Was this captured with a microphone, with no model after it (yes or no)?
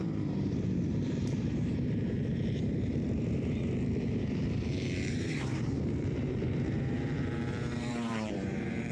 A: no